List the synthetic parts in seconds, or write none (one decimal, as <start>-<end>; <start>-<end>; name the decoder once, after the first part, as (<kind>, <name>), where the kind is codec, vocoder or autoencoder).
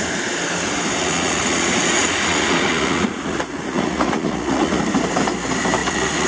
1.0-4.8 (vocoder, Vocos); 5.8-6.3